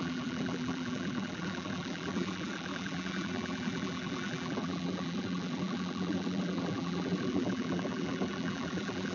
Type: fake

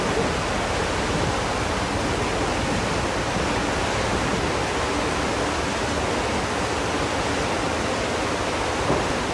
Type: real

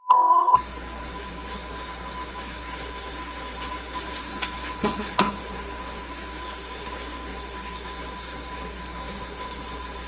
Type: fake